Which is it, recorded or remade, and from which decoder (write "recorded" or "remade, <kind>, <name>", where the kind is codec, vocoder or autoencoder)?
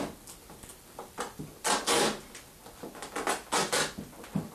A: recorded